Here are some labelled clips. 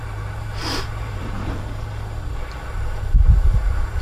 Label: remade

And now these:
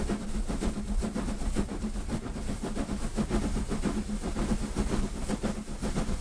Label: recorded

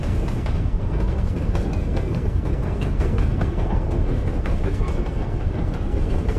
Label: remade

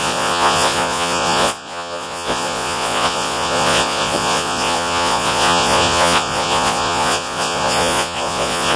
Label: remade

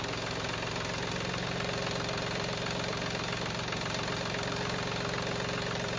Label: recorded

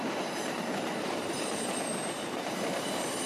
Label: remade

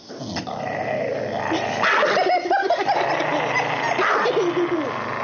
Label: recorded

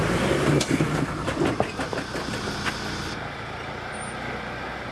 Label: recorded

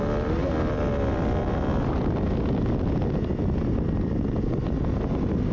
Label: recorded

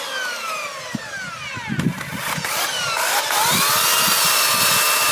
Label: recorded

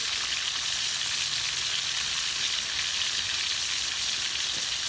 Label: recorded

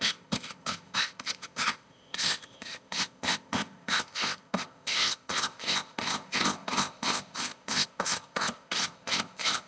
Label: remade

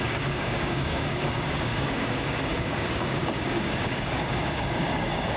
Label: remade